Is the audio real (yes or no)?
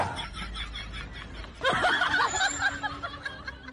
yes